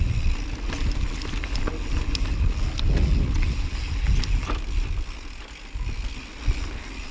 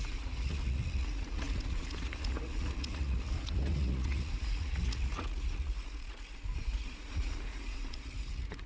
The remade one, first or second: second